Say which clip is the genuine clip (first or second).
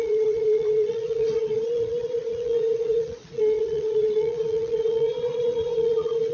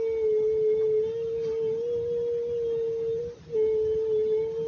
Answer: second